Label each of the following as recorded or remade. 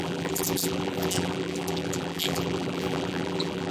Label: remade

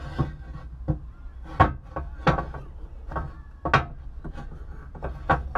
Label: recorded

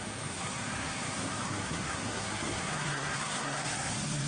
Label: remade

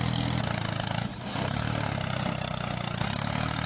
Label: recorded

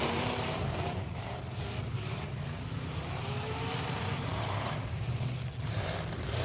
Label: remade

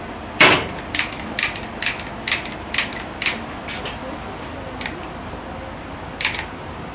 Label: recorded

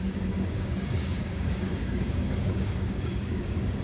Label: remade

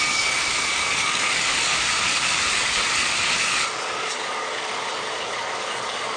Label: remade